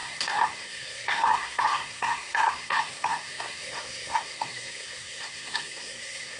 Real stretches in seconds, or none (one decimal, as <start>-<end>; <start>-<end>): none